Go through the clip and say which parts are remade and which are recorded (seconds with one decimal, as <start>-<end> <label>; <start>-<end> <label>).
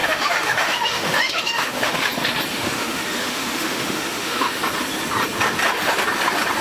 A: 0.0-2.1 remade; 2.1-2.5 recorded; 2.5-4.6 remade; 4.6-6.6 recorded